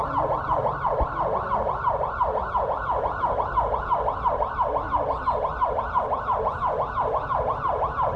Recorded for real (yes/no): yes